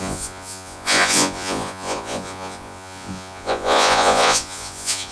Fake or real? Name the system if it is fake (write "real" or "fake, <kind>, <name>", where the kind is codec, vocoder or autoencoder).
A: fake, vocoder, Vocos